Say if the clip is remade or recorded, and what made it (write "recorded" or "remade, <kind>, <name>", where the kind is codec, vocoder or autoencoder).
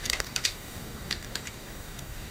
remade, codec, DAC